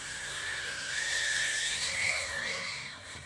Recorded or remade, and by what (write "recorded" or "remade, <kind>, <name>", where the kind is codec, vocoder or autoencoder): remade, codec, SNAC